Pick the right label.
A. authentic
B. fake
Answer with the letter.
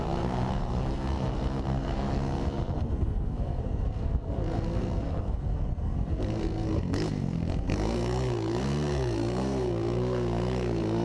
B